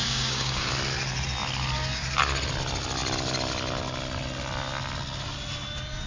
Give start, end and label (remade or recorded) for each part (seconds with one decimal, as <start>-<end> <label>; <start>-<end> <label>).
0.0-0.7 remade; 0.7-6.1 recorded